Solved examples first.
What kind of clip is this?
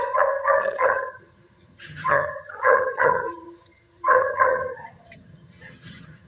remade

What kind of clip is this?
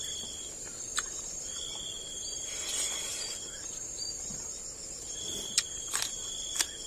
recorded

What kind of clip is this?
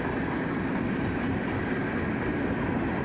recorded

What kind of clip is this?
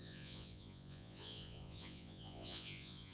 remade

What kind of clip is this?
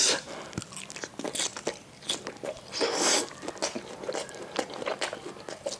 recorded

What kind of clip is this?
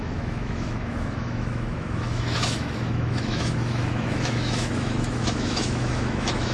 remade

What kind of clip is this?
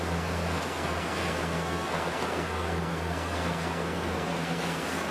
remade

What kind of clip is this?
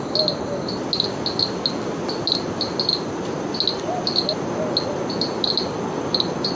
recorded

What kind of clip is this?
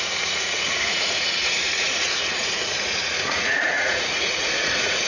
remade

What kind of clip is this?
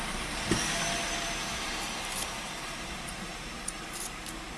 remade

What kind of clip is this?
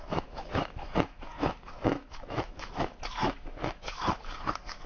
remade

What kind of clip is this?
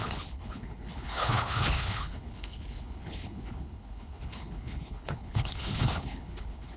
remade